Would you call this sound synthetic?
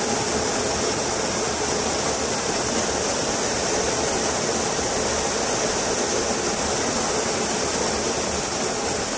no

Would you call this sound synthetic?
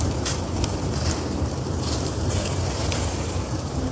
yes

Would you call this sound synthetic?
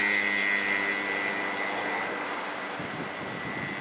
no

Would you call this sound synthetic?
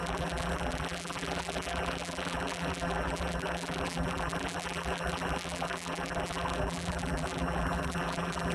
yes